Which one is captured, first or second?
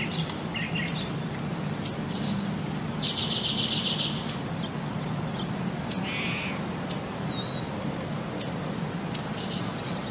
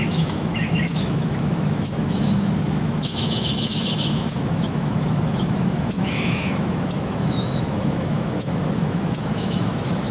first